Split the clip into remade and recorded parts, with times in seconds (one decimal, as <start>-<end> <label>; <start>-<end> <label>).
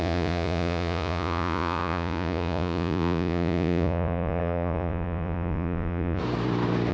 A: 0.0-6.2 remade; 6.2-6.9 recorded